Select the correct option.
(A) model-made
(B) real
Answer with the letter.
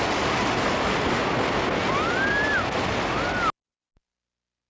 B